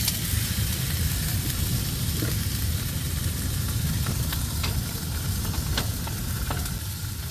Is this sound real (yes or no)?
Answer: yes